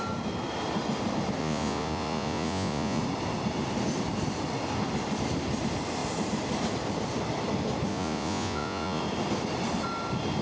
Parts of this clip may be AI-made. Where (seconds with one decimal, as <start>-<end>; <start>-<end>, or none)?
1.4-3.0; 7.9-9.0